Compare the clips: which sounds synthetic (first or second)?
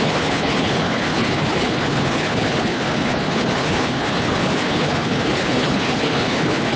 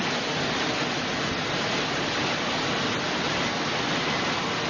first